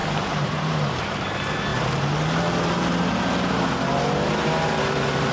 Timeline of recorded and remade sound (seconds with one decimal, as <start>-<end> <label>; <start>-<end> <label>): 0.0-0.9 remade; 0.9-5.3 recorded